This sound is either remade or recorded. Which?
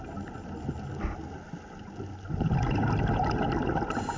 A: recorded